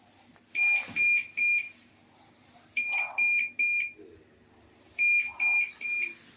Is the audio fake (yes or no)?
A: no